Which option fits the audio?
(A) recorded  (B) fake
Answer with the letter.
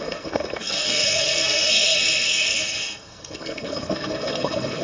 B